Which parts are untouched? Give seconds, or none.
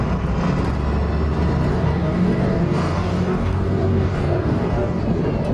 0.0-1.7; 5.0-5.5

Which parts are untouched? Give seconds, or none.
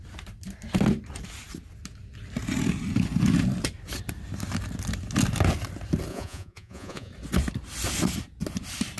0.0-6.1; 7.1-9.0